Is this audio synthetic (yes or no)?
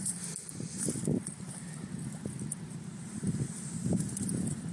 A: no